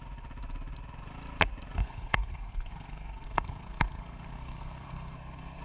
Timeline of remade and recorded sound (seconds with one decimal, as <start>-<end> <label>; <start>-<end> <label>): 0.0-1.8 recorded; 1.8-5.6 remade